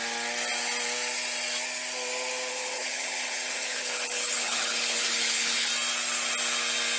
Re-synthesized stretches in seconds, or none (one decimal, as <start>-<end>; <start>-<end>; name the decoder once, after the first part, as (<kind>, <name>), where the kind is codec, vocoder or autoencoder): 2.5-5.7 (codec, HILCodec)